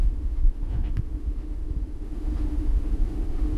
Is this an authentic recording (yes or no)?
no